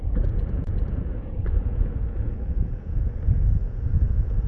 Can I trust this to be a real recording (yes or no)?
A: no